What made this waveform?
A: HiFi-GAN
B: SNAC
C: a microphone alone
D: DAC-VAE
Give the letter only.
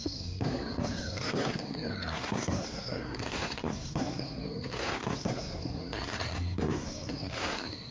B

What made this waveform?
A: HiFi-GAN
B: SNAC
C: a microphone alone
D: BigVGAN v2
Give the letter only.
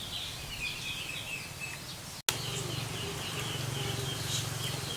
C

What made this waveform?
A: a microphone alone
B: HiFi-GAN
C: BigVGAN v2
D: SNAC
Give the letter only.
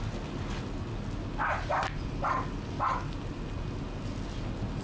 A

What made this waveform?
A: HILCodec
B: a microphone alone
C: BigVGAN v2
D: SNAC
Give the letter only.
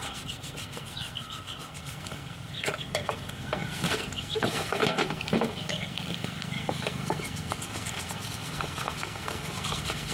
D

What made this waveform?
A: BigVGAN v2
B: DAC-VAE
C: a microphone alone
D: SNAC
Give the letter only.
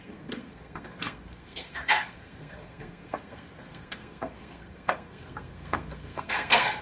D